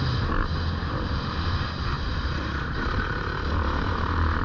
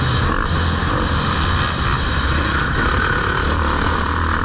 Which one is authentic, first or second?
second